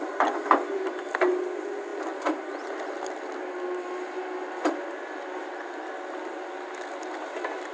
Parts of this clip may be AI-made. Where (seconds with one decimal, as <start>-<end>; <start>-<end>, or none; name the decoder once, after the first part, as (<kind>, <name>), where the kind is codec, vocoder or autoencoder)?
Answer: none

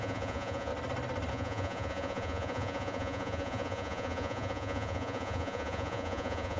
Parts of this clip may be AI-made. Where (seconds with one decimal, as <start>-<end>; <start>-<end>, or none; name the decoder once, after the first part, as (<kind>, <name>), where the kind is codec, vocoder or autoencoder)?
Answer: 0.0-0.7 (vocoder, Vocos); 1.3-6.6

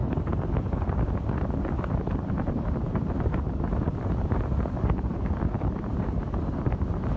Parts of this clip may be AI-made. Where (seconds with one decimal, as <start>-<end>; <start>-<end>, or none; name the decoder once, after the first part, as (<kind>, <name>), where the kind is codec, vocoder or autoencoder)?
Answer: 0.6-7.2 (vocoder, BigVGAN v2)

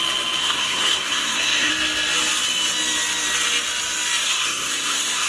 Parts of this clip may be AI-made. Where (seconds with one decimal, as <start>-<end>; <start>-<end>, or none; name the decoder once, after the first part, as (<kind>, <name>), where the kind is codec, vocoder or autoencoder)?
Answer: 0.4-1.7 (codec, SNAC); 4.2-5.3

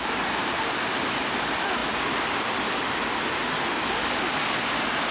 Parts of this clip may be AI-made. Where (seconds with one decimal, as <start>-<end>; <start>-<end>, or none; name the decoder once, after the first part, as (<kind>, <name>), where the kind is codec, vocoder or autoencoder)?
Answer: none

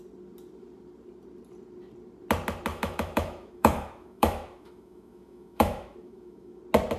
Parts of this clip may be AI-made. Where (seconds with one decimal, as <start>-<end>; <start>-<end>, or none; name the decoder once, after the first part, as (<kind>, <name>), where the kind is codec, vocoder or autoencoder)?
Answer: 2.7-6.6 (autoencoder, DAC-VAE)

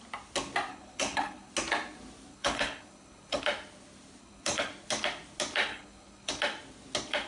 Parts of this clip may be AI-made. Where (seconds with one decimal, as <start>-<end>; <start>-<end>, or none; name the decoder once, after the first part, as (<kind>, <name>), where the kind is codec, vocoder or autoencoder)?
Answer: 0.7-1.5 (codec, HILCodec); 2.3-3.4; 4.2-4.7; 5.7-6.3

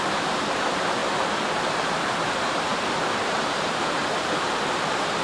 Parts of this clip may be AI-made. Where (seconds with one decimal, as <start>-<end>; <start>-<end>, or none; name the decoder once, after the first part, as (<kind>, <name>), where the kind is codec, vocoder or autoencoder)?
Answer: 0.0-1.0 (vocoder, BigVGAN v2); 1.9-4.0; 4.5-5.2